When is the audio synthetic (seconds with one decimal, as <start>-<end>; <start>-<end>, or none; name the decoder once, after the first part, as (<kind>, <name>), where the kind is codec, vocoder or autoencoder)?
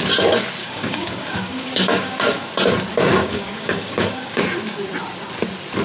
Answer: 0.6-2.5 (codec, DAC); 3.2-4.4